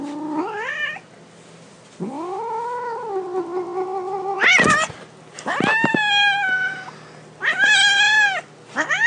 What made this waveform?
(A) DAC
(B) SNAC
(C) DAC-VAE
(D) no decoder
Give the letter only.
D